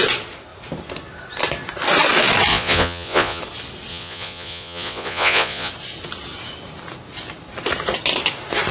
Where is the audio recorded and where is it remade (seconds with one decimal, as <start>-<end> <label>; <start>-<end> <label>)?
0.0-2.5 recorded; 2.5-3.4 remade; 3.4-3.9 recorded; 3.9-5.7 remade; 5.7-8.7 recorded

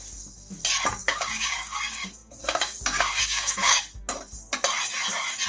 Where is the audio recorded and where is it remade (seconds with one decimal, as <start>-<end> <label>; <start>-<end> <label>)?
0.0-1.0 recorded; 1.0-3.8 remade; 3.8-5.5 recorded

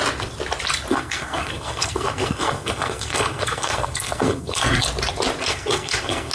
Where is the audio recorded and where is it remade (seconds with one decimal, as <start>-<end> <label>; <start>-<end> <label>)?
0.0-0.9 recorded; 0.9-4.7 remade; 4.7-5.5 recorded; 5.5-6.3 remade

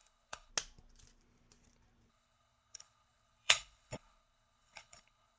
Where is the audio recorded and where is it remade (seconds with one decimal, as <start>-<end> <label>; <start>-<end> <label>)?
0.0-0.5 remade; 0.5-2.1 recorded; 2.1-5.4 remade

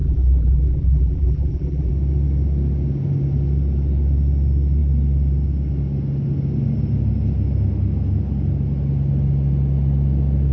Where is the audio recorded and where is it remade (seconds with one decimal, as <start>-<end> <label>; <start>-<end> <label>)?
0.0-1.9 remade; 1.9-10.5 recorded

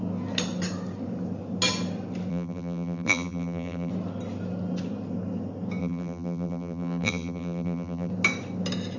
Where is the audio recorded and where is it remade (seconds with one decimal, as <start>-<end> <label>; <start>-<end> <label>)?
0.0-2.3 recorded; 2.3-3.9 remade; 3.9-5.8 recorded; 5.8-8.1 remade; 8.1-9.0 recorded

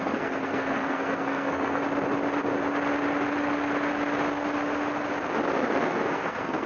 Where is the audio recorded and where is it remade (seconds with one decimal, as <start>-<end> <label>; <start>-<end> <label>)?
0.0-1.8 remade; 1.8-5.8 recorded; 5.8-6.7 remade

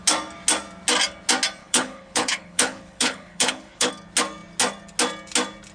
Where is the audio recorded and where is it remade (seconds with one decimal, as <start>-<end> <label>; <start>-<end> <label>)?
0.0-1.6 recorded; 1.6-3.9 remade; 3.9-5.7 recorded